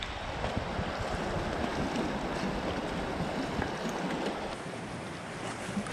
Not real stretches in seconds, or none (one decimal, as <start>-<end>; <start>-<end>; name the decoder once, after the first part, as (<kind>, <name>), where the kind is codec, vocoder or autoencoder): none